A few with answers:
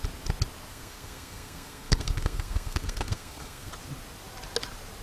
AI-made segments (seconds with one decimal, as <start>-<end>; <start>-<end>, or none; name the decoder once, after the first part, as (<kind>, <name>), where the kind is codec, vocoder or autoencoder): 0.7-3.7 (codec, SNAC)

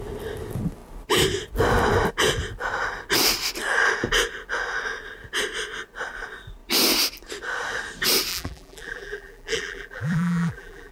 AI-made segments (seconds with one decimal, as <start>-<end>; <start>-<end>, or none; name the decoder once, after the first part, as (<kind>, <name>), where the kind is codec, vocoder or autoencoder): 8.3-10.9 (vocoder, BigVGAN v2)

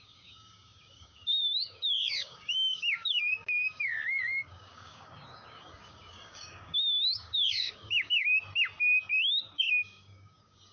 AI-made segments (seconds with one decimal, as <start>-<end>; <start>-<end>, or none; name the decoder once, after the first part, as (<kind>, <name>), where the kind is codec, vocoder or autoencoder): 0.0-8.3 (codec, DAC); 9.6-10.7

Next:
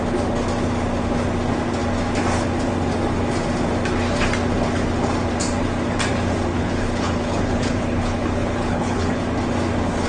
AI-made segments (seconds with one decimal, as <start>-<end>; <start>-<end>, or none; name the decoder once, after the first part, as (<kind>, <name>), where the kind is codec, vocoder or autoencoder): 6.5-9.2 (codec, HILCodec)